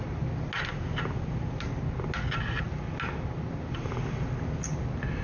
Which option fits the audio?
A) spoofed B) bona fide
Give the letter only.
B